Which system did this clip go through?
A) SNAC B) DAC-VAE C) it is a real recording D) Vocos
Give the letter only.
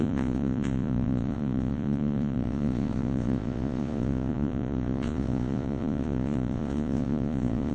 D